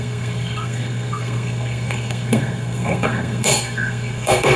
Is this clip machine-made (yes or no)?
yes